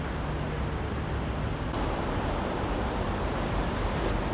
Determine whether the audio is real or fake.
real